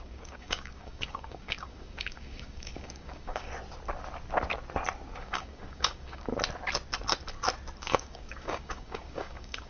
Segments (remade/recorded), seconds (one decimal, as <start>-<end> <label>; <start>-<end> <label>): 0.0-3.5 remade; 3.5-5.2 recorded; 5.2-6.3 remade; 6.3-7.8 recorded; 7.8-9.7 remade